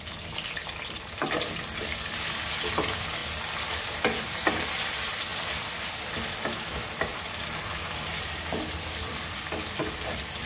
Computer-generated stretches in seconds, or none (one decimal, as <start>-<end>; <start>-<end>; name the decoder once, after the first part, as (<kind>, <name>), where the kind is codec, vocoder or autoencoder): 5.3-5.9 (vocoder, BigVGAN v2); 7.1-8.2